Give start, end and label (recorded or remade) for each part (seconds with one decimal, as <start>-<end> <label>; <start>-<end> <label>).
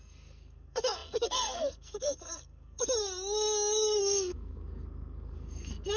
0.0-6.0 remade